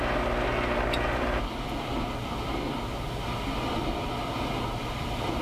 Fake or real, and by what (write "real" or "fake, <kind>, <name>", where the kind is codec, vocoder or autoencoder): real